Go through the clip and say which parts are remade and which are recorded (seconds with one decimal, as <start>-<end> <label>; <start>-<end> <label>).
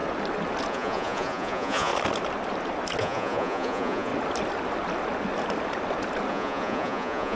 0.0-0.7 recorded; 0.7-1.9 remade; 1.9-3.0 recorded; 3.0-4.1 remade; 4.1-6.3 recorded; 6.3-7.4 remade